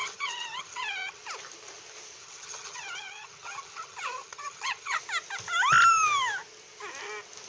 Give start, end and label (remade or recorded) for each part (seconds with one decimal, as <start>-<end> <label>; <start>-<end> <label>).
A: 0.0-1.2 remade; 1.2-2.2 recorded; 2.2-5.0 remade; 5.0-7.5 recorded